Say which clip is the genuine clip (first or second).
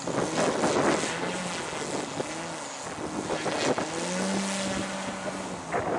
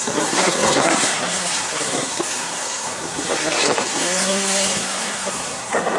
first